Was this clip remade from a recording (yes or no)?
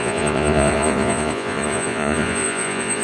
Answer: yes